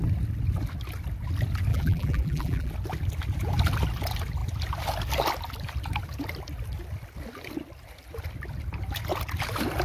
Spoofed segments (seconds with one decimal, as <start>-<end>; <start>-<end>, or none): 1.7-2.7